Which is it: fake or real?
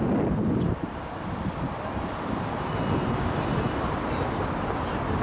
real